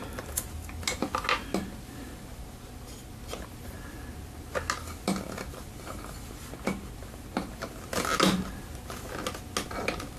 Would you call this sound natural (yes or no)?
yes